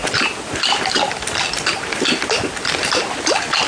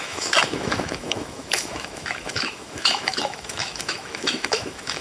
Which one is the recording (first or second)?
first